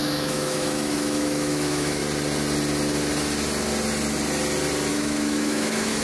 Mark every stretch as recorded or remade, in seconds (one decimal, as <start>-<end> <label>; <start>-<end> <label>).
0.0-2.0 remade; 2.0-4.9 recorded; 4.9-6.0 remade